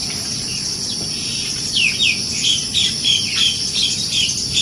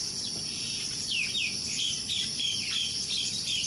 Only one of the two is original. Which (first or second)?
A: first